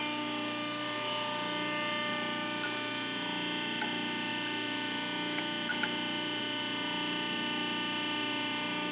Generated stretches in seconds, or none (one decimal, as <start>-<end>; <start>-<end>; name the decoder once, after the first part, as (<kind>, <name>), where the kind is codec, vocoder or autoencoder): none